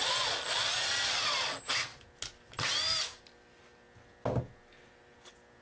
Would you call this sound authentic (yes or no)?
yes